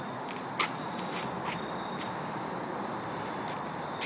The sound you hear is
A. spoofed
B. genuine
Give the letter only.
B